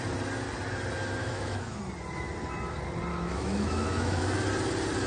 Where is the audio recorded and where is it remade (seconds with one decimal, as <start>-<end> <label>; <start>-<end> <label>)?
0.0-1.2 recorded; 1.2-1.8 remade; 1.8-3.1 recorded; 3.1-4.2 remade; 4.2-5.1 recorded